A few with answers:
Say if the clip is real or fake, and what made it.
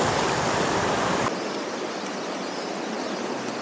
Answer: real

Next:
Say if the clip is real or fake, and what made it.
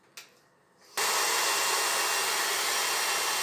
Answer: real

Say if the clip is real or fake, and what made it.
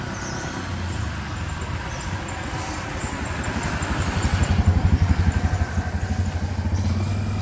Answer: real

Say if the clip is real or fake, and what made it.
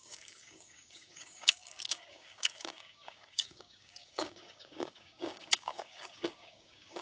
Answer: fake, codec, DAC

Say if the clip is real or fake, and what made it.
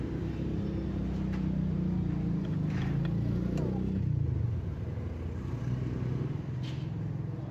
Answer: real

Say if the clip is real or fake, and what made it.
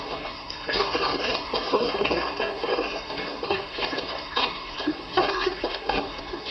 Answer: fake, codec, SNAC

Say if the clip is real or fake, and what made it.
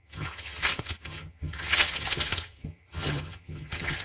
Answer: fake, vocoder, HiFi-GAN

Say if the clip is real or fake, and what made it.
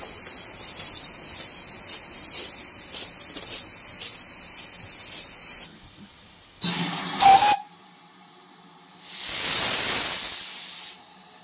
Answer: real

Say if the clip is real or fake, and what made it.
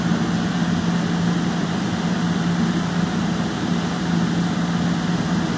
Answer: real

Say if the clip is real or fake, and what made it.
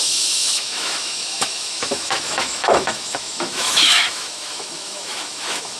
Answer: fake, autoencoder, DAC-VAE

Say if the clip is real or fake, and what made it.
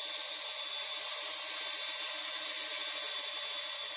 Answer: real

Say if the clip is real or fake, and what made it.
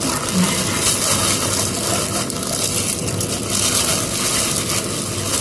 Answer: real